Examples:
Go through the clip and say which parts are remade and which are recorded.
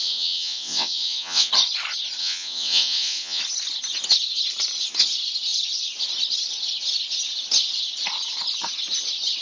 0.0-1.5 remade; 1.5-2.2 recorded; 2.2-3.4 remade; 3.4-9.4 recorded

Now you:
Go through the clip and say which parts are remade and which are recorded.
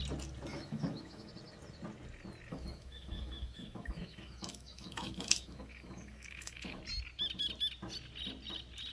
0.0-0.5 recorded; 0.5-1.3 remade; 1.3-2.5 recorded; 2.5-6.8 remade; 6.8-8.9 recorded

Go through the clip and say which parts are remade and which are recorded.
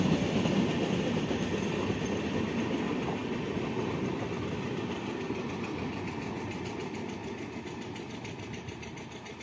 0.0-9.4 recorded